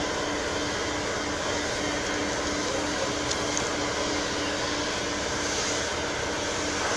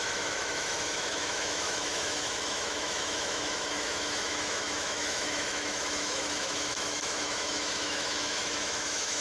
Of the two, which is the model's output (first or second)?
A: second